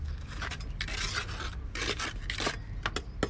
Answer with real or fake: real